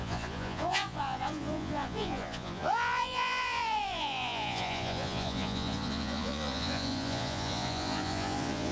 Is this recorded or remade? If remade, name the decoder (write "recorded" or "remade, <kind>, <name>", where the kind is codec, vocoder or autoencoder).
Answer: remade, vocoder, Vocos